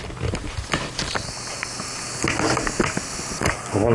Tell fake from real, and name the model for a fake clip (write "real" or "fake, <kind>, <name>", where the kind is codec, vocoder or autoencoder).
real